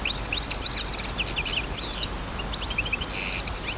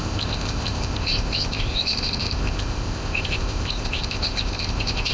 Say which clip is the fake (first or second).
second